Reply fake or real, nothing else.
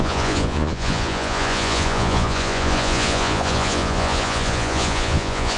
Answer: fake